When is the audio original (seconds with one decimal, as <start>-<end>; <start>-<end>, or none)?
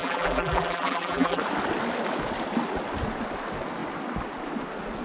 1.4-5.0